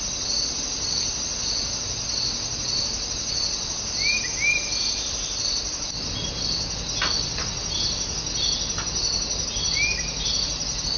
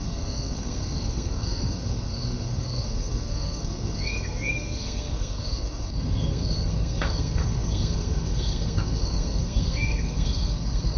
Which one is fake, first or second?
second